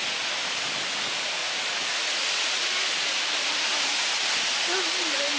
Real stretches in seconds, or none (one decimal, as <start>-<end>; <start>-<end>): 0.0-5.4